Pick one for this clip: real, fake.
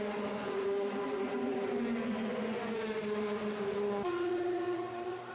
fake